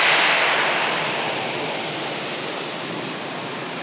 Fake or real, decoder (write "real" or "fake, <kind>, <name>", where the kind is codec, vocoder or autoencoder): real